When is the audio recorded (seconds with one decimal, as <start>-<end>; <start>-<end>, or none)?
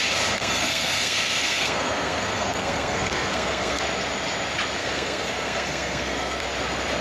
0.0-0.4; 3.8-4.8; 6.4-7.0